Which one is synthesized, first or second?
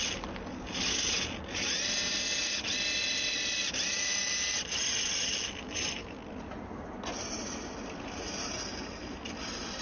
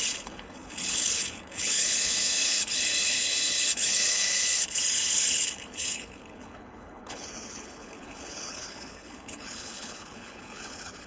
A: second